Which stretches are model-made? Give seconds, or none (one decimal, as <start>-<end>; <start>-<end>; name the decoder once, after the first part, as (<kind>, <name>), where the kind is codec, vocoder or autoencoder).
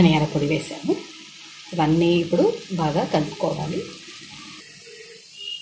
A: none